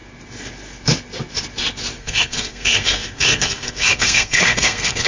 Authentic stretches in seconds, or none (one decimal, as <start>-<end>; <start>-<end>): 0.0-2.0